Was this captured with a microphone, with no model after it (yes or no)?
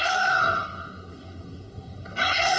no